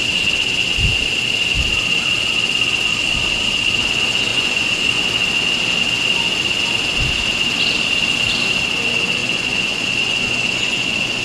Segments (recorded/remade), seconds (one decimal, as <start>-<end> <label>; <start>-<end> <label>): 0.0-4.3 recorded; 4.3-5.1 remade; 5.1-9.2 recorded; 9.2-11.2 remade